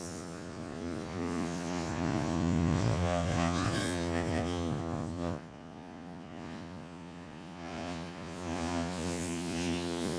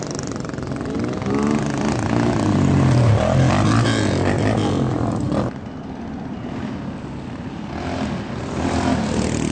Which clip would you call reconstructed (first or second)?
first